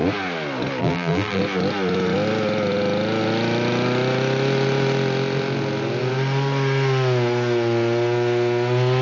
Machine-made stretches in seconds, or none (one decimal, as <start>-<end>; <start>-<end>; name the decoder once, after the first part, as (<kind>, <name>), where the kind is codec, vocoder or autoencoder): 0.8-1.4 (vocoder, BigVGAN v2)